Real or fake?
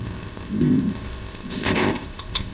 fake